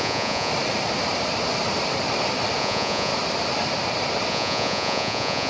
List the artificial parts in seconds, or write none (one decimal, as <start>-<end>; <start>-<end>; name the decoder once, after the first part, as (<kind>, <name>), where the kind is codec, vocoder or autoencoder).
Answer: 0.0-0.5 (vocoder, Vocos); 2.6-3.1; 4.3-5.5